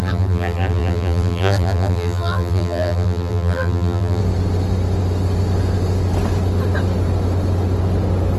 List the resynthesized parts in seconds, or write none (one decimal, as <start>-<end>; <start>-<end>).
0.0-4.2